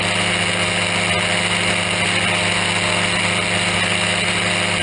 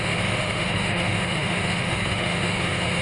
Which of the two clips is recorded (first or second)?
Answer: first